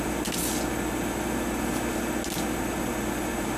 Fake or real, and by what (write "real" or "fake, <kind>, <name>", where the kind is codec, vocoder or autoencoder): real